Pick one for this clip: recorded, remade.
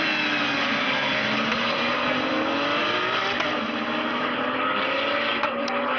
recorded